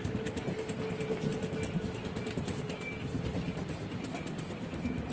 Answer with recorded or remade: recorded